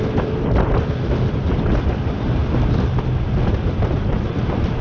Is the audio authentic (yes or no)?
yes